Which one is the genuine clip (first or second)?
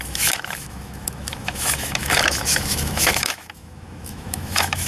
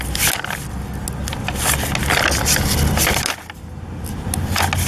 second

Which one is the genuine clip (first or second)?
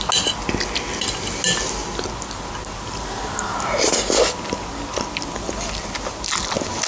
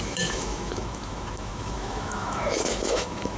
first